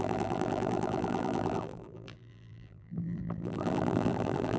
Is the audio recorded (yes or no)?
no